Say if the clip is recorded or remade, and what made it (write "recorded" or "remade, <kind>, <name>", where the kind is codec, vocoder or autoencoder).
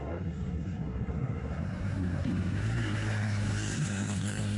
remade, codec, SNAC